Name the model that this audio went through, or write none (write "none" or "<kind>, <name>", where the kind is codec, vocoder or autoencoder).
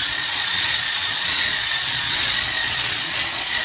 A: vocoder, Vocos